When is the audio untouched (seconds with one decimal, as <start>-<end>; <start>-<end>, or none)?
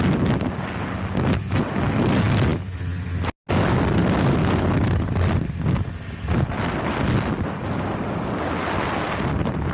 0.0-9.7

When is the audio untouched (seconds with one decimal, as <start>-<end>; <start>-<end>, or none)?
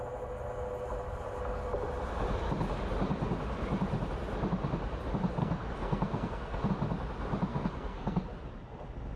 0.0-5.4; 6.7-7.5; 8.2-9.2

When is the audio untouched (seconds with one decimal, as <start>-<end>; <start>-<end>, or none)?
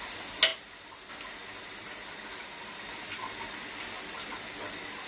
0.0-5.1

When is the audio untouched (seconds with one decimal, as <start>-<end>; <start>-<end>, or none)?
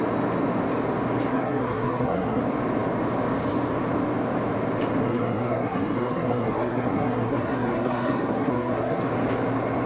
0.0-1.3; 2.4-5.0; 9.0-9.9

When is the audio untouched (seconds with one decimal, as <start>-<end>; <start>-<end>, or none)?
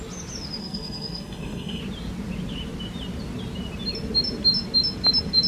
0.0-0.6; 1.8-5.5